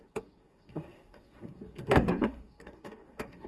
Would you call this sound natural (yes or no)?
no